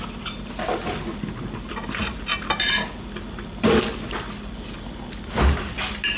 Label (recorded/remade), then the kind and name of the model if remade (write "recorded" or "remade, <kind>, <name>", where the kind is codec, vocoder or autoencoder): recorded